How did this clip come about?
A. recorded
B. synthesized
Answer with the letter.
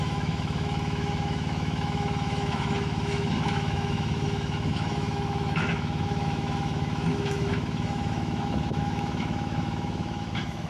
B